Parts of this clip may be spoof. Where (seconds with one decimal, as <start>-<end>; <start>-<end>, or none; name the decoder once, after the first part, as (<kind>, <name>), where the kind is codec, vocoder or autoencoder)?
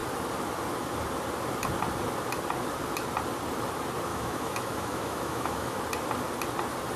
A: 4.1-5.8 (autoencoder, DAC-VAE)